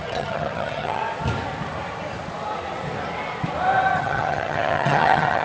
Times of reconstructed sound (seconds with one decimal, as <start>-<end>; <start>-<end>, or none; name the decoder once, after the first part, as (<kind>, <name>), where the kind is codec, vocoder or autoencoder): 0.0-1.0 (vocoder, HiFi-GAN); 4.0-5.4